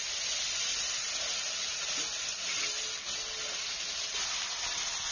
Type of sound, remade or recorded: recorded